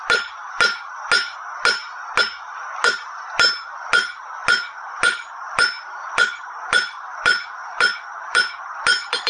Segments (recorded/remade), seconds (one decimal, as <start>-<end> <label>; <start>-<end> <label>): 0.0-9.3 recorded

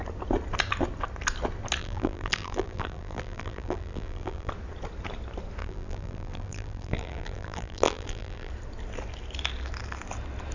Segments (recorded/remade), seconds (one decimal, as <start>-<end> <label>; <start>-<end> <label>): 0.0-1.8 recorded; 1.8-4.5 remade; 4.5-5.6 recorded; 5.6-8.5 remade; 8.5-10.5 recorded

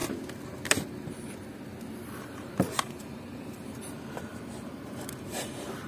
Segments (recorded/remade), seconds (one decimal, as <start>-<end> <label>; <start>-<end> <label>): 0.0-2.2 recorded; 2.2-4.3 remade; 4.3-5.1 recorded; 5.1-5.9 remade

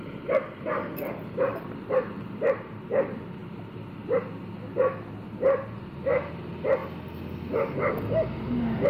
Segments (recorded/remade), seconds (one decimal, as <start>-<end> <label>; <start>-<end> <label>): 0.0-1.5 recorded; 1.5-3.0 remade; 3.0-8.9 recorded

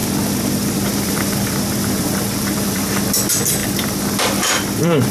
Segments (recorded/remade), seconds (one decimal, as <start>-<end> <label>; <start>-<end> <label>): 0.0-2.9 remade; 2.9-3.6 recorded; 3.6-5.1 remade

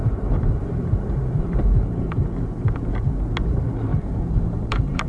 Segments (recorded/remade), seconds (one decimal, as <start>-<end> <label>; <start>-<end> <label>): 0.0-2.2 remade; 2.2-3.5 recorded; 3.5-5.1 remade

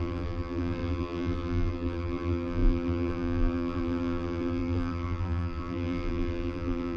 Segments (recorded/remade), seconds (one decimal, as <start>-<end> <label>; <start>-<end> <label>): 0.0-7.0 remade

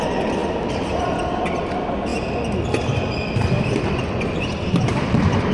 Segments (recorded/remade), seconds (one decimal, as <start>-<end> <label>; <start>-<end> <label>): 0.0-2.1 remade; 2.1-3.7 recorded; 3.7-5.5 remade